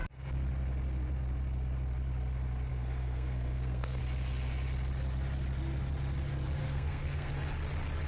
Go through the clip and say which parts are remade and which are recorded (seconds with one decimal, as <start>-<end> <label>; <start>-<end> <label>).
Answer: 0.0-2.7 recorded; 2.7-4.0 remade; 4.0-6.6 recorded; 6.6-7.3 remade; 7.3-8.1 recorded